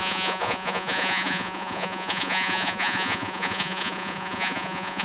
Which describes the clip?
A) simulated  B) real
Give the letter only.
A